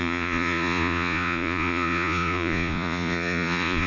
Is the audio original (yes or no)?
no